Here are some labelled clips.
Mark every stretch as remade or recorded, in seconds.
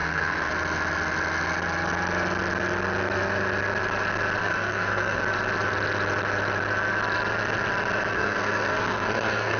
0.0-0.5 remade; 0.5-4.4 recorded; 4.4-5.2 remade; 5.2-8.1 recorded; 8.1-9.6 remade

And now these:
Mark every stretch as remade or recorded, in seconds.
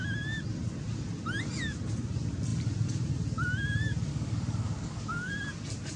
0.0-4.1 recorded; 4.1-5.3 remade; 5.3-6.0 recorded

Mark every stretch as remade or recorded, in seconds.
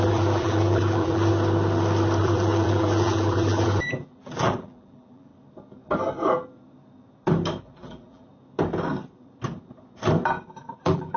0.0-1.3 remade; 1.3-2.2 recorded; 2.2-5.3 remade; 5.3-7.6 recorded; 7.6-8.3 remade; 8.3-10.6 recorded; 10.6-11.2 remade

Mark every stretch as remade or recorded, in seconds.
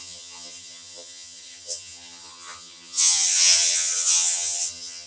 0.0-5.1 remade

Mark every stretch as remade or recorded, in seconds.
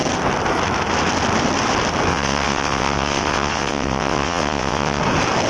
0.0-2.1 recorded; 2.1-5.0 remade; 5.0-5.5 recorded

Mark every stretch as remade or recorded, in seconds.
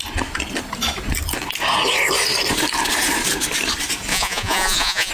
0.0-4.1 recorded; 4.1-5.1 remade